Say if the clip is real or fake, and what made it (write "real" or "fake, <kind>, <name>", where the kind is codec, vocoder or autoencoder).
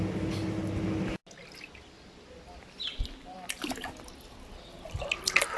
real